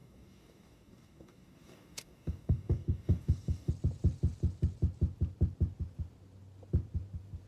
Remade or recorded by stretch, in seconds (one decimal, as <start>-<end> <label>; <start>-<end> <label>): 0.0-3.7 remade; 3.7-7.5 recorded